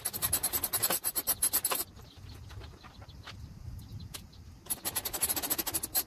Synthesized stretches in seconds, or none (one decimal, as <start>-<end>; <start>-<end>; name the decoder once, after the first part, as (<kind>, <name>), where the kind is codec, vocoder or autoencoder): 0.4-2.1 (vocoder, BigVGAN v2); 3.0-4.3